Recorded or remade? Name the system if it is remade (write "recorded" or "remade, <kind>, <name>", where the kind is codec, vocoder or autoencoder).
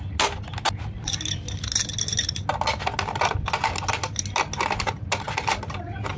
recorded